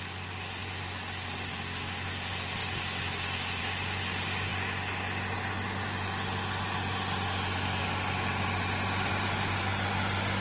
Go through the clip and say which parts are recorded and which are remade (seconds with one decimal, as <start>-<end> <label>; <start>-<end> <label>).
0.0-10.4 recorded